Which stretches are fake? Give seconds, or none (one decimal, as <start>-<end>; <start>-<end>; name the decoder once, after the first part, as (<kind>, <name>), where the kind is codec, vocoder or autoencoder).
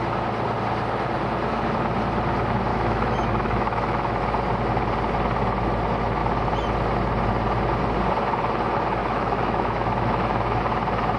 2.7-4.2 (autoencoder, DAC-VAE); 9.0-10.6